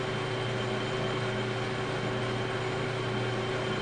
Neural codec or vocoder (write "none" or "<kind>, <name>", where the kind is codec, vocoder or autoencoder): none